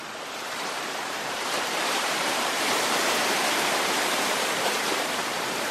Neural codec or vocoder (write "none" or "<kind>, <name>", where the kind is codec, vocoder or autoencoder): vocoder, BigVGAN v2